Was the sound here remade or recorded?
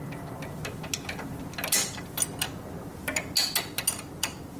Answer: recorded